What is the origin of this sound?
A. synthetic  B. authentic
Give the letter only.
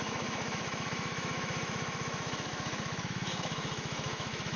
A